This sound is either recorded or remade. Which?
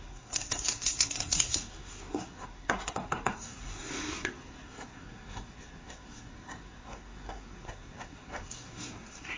remade